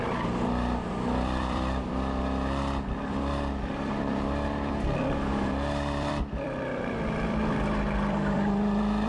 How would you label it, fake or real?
fake